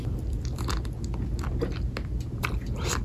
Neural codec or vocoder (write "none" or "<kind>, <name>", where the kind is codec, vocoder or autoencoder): none